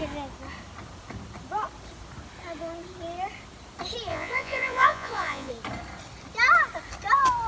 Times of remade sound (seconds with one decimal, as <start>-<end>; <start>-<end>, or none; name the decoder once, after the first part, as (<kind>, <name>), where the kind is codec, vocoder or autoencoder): 4.1-5.5 (vocoder, Vocos)